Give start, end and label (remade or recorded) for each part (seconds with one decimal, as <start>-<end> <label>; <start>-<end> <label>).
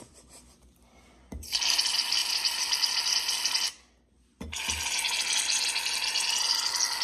0.0-7.0 recorded